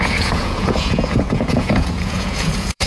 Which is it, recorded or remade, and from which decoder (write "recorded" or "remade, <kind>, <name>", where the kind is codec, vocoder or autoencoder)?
remade, vocoder, Vocos